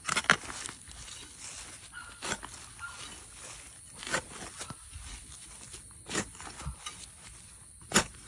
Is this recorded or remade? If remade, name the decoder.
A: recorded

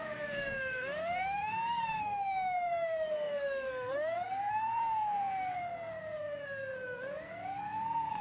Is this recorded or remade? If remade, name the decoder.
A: remade, codec, SNAC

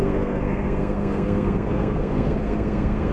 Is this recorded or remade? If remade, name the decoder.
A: remade, codec, SNAC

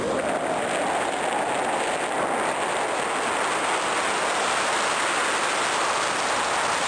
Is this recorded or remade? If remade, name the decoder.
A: recorded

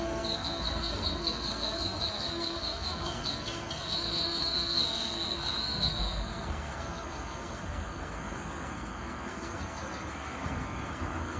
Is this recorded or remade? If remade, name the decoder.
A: remade, codec, SNAC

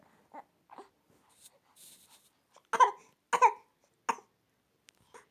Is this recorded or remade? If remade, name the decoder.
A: recorded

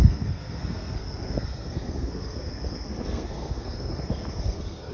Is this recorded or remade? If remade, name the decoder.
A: remade, codec, SNAC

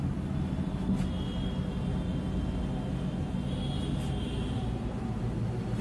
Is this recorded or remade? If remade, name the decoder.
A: recorded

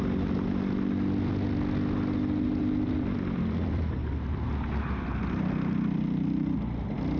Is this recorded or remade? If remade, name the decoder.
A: recorded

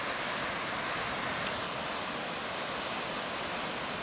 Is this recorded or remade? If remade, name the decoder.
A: recorded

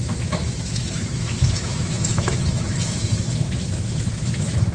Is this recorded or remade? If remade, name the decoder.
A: remade, autoencoder, DAC-VAE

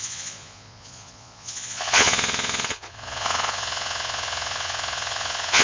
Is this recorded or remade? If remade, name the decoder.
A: remade, vocoder, Vocos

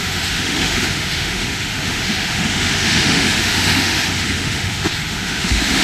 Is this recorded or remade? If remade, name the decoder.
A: remade, autoencoder, DAC-VAE